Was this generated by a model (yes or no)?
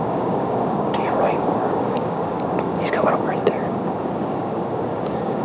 yes